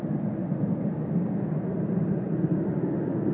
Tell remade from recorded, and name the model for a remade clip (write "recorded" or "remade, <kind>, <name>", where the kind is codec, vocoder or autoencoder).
recorded